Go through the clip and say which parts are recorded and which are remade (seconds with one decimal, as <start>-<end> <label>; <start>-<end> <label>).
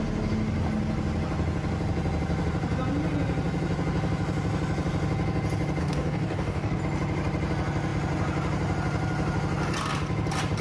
0.0-5.8 recorded; 5.8-6.8 remade; 6.8-10.6 recorded